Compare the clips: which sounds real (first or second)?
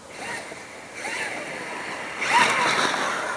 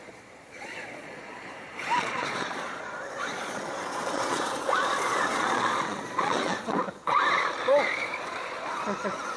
first